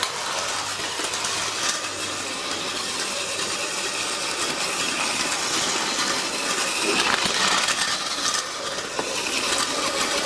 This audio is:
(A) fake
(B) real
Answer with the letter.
B